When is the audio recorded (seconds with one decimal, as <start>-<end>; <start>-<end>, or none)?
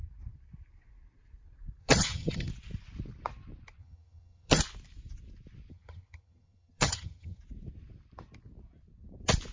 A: 0.0-1.8; 2.5-3.8; 4.6-5.7; 7.4-9.5